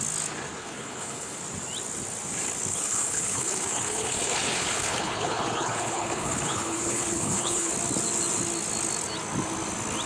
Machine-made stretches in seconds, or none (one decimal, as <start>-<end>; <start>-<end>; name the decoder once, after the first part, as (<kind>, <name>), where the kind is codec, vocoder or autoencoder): 0.6-1.4 (codec, HILCodec); 2.7-7.7